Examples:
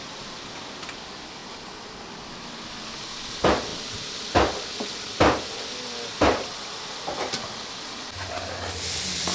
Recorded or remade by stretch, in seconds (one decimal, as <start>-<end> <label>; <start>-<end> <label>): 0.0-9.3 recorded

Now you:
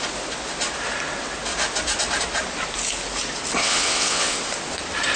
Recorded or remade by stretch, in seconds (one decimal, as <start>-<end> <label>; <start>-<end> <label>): 0.0-3.6 recorded; 3.6-4.4 remade; 4.4-5.2 recorded

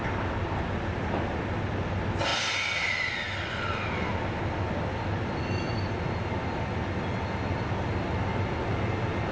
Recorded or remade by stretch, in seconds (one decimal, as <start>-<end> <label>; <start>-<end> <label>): 0.0-9.3 recorded

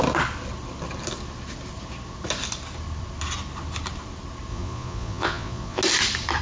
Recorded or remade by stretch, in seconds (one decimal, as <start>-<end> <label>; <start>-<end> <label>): 0.0-4.5 recorded; 4.5-5.8 remade; 5.8-6.4 recorded